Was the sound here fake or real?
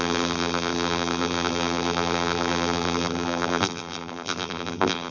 fake